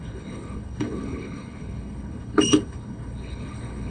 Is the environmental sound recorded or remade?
remade